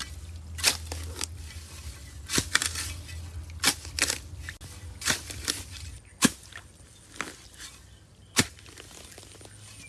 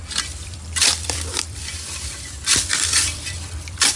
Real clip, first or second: first